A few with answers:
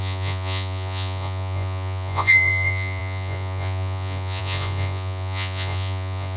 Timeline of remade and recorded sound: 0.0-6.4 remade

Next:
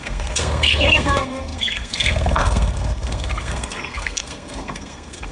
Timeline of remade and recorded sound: 0.0-5.3 remade

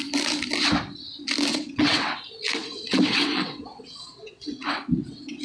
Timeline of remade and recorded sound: 0.0-1.5 recorded; 1.5-2.2 remade; 2.2-2.6 recorded; 2.6-5.4 remade

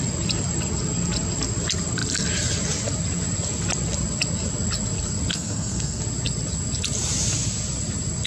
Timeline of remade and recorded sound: 0.0-5.3 recorded; 5.3-6.0 remade; 6.0-8.3 recorded

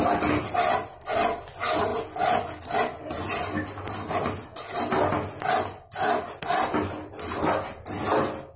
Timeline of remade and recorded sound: 0.0-8.6 recorded

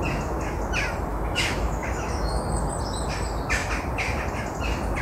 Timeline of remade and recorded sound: 0.0-1.1 recorded; 1.1-2.4 remade; 2.4-5.0 recorded